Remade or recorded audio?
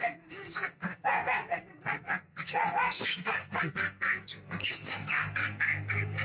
remade